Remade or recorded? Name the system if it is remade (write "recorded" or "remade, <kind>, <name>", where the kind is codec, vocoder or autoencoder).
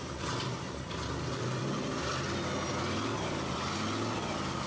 remade, vocoder, BigVGAN v2